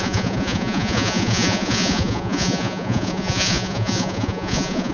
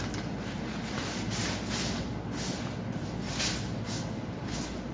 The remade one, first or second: first